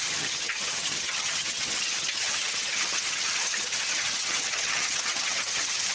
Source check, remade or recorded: remade